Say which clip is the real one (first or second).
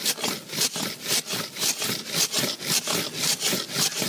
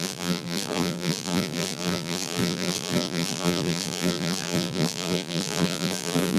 first